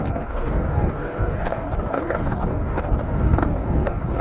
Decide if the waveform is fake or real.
fake